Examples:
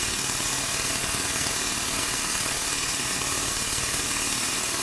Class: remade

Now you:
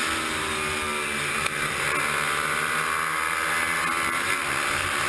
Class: recorded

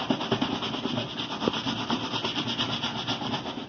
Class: recorded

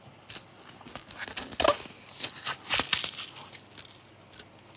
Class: recorded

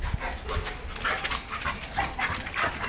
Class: recorded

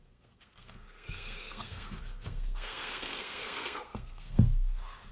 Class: remade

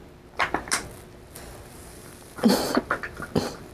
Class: recorded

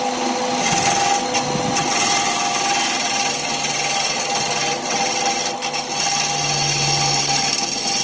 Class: recorded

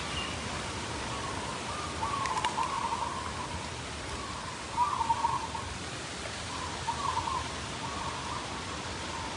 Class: recorded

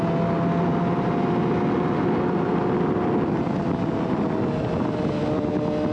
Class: recorded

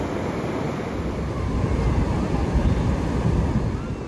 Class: recorded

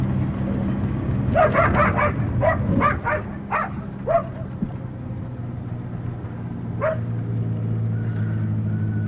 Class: recorded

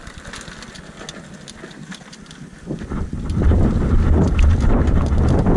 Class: recorded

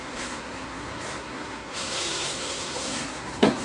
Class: remade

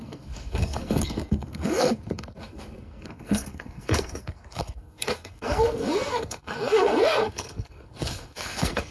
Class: remade